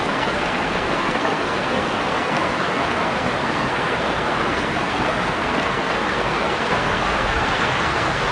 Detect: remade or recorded remade